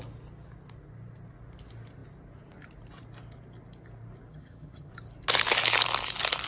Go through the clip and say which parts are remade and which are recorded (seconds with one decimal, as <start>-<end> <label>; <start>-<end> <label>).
0.0-4.3 recorded; 4.3-4.9 remade; 4.9-6.5 recorded